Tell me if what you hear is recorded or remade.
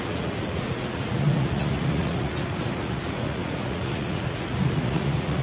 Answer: remade